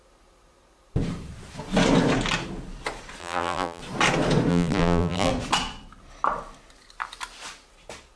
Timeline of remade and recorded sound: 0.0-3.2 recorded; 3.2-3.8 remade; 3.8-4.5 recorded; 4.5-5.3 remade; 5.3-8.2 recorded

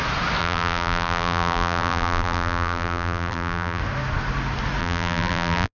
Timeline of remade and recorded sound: 0.0-0.4 recorded; 0.4-3.8 remade; 3.8-4.8 recorded; 4.8-5.7 remade